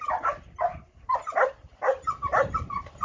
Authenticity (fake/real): real